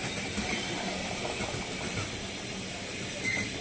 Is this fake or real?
real